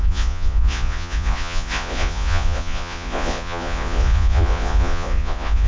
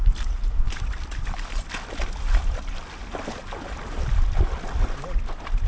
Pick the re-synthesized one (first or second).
first